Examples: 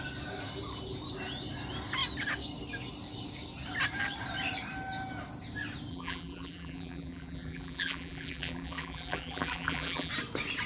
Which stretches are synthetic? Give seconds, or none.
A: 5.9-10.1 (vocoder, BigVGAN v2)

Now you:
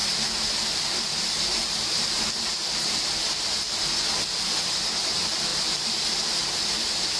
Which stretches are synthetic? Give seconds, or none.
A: 0.0-3.3 (vocoder, BigVGAN v2)

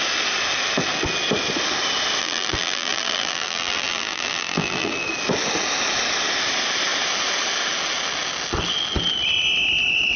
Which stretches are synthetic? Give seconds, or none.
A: 2.2-4.9 (vocoder, BigVGAN v2)

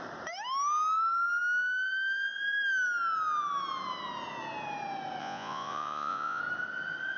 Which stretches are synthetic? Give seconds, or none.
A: 5.2-6.4 (vocoder, Vocos)

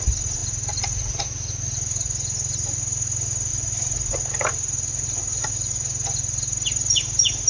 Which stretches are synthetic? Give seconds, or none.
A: none

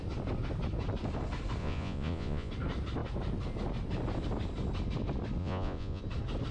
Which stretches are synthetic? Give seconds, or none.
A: 1.6-2.5 (vocoder, Vocos); 5.4-6.0

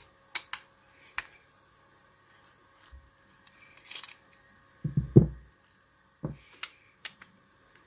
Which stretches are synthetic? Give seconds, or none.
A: 1.2-2.6 (vocoder, BigVGAN v2); 6.9-7.9